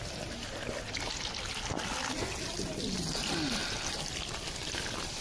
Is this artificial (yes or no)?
no